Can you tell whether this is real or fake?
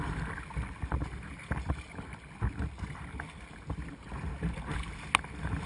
real